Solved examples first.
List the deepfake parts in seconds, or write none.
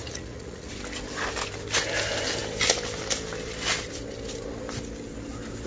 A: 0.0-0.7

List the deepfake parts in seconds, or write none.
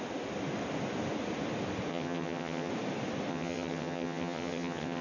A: 1.9-2.7; 3.3-5.0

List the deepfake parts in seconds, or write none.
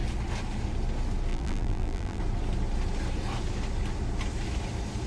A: 1.3-2.2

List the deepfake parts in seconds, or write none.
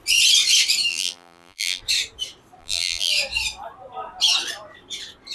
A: 0.9-1.8; 2.6-3.1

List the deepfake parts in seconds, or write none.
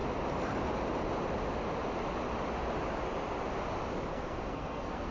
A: 4.1-5.1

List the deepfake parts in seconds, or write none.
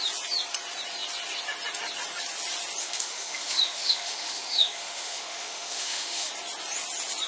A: 2.8-6.3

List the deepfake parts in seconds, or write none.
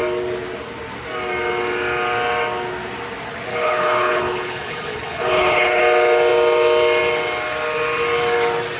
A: 3.5-5.8